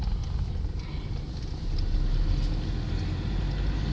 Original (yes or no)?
yes